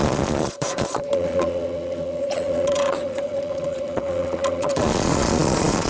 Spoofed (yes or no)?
yes